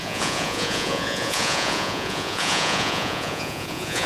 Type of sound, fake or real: fake